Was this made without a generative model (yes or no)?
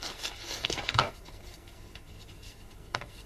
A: no